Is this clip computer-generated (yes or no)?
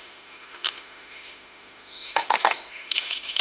yes